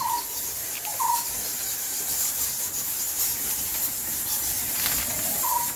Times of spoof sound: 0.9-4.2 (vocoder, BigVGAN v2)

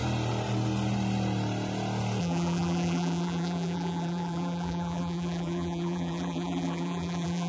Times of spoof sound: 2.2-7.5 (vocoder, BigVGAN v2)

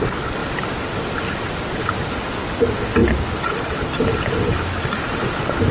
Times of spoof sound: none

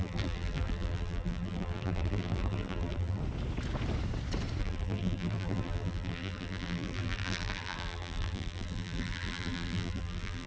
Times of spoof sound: 0.0-3.2 (vocoder, BigVGAN v2); 4.6-10.5